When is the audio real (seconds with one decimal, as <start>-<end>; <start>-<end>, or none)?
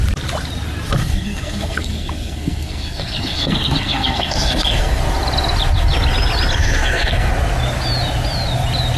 0.0-1.0; 5.0-6.6; 7.3-9.0